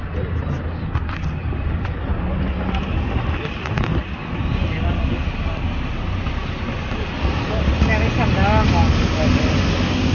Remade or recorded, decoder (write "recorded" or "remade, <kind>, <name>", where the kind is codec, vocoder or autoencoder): recorded